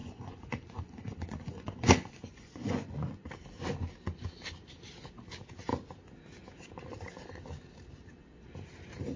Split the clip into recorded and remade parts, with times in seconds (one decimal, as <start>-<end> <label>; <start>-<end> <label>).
0.0-3.3 remade; 3.3-9.2 recorded